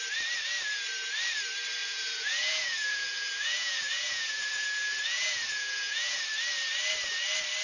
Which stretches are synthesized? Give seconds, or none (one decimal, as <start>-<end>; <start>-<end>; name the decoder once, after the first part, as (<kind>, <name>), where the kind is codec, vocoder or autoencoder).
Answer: 1.8-6.2 (vocoder, Vocos)